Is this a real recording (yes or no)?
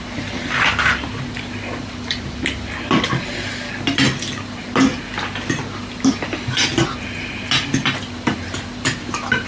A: yes